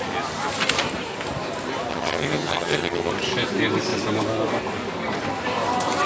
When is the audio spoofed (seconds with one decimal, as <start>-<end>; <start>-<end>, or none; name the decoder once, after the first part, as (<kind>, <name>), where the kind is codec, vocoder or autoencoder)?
1.9-3.1 (vocoder, HiFi-GAN)